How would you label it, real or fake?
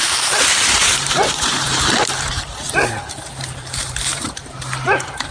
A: fake